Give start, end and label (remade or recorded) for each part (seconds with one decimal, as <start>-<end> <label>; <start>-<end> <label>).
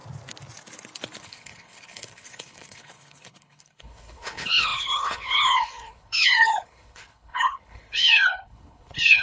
0.0-1.2 recorded; 1.2-9.2 remade